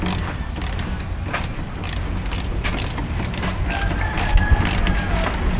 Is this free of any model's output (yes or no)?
yes